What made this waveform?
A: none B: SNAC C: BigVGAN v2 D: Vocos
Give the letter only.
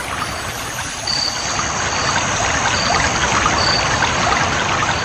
A